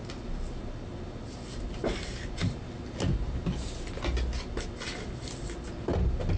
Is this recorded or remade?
recorded